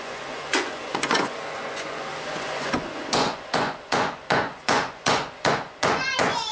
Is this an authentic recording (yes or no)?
no